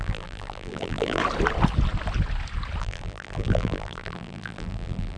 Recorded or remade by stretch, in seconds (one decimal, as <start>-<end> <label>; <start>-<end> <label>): 0.0-1.2 remade; 1.2-2.8 recorded; 2.8-5.2 remade